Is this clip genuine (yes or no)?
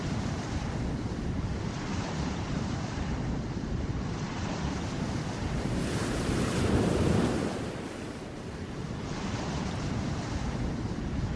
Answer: no